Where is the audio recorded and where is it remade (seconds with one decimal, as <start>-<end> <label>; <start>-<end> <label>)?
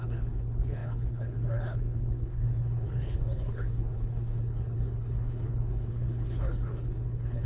0.0-7.5 remade